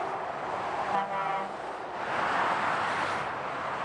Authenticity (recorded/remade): recorded